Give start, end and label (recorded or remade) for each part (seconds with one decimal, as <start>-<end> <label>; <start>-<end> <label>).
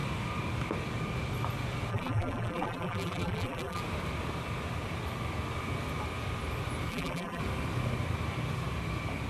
0.0-1.9 recorded; 1.9-3.8 remade; 3.8-6.9 recorded; 6.9-7.4 remade; 7.4-9.3 recorded